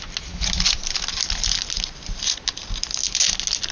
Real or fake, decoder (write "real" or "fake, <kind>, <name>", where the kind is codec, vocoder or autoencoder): real